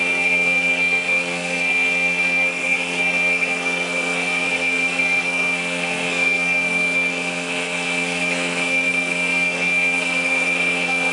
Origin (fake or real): fake